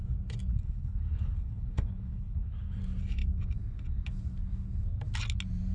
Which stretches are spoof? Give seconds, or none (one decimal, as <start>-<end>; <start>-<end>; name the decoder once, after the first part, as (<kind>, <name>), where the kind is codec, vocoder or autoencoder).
0.5-2.8 (codec, HILCodec)

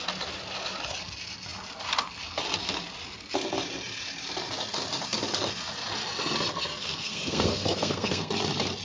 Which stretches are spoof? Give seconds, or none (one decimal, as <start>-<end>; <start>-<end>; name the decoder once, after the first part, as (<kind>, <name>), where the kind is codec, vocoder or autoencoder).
6.8-8.3 (codec, SNAC)